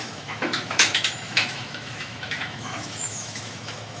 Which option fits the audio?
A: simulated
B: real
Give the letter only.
A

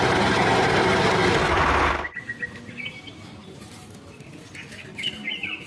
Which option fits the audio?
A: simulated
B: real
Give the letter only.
B